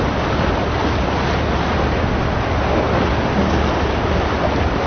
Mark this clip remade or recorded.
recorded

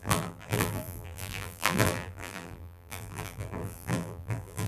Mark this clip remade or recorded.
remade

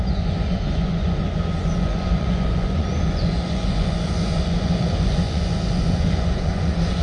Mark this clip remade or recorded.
remade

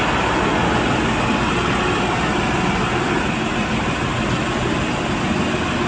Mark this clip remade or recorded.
recorded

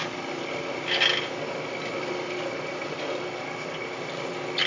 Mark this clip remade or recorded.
recorded